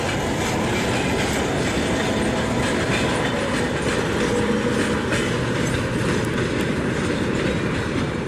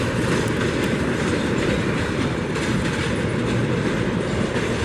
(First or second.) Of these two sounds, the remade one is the second